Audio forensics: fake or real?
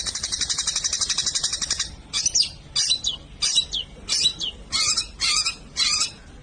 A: real